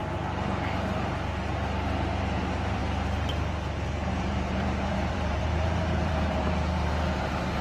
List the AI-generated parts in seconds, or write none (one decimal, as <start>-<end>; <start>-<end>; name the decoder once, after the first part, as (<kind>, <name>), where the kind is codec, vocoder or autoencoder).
2.4-2.8 (vocoder, BigVGAN v2); 4.1-7.6